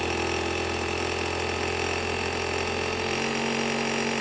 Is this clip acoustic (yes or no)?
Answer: yes